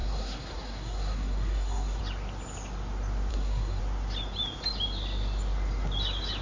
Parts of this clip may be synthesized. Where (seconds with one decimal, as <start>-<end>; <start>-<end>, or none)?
0.0-2.0; 3.3-3.8